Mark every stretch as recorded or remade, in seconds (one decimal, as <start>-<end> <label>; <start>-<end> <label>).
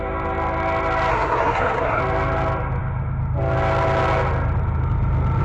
0.0-1.1 recorded; 1.1-2.0 remade; 2.0-5.4 recorded